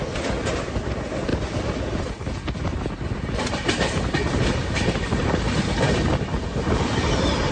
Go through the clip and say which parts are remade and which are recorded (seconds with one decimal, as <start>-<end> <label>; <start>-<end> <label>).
0.0-7.5 recorded